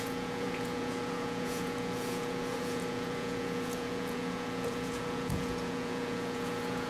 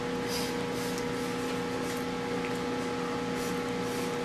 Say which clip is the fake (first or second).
first